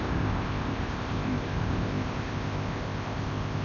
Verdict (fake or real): fake